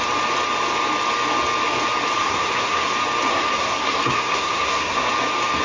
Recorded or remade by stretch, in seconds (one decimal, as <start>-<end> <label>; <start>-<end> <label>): 0.0-2.2 recorded; 2.2-2.9 remade; 2.9-3.3 recorded; 3.3-5.1 remade; 5.1-5.6 recorded